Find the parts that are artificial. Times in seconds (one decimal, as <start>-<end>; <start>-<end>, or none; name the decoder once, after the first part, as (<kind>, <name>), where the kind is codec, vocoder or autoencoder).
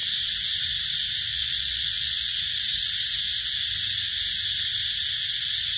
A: 1.3-2.4 (vocoder, Vocos)